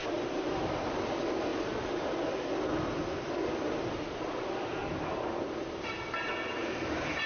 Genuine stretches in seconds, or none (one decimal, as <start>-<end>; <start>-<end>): 1.0-4.8; 5.9-6.6